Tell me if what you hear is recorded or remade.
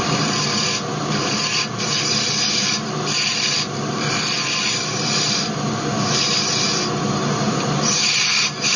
remade